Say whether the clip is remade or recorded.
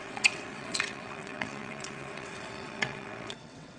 remade